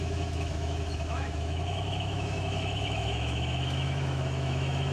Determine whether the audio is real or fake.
fake